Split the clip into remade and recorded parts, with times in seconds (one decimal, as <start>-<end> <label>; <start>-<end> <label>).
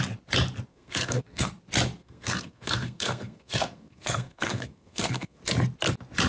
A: 0.0-0.7 recorded; 0.7-1.5 remade; 1.5-2.0 recorded; 2.0-5.4 remade; 5.4-6.3 recorded